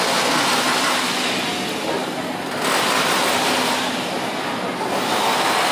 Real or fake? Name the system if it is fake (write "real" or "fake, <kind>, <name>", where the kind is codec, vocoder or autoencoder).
real